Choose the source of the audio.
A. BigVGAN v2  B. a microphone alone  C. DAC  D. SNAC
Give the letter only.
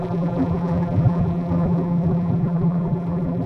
A